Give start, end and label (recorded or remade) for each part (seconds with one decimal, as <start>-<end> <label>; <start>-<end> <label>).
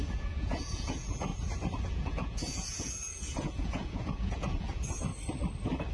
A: 0.0-1.3 remade; 1.3-1.8 recorded; 1.8-5.1 remade; 5.1-5.9 recorded